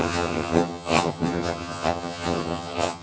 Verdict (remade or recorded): remade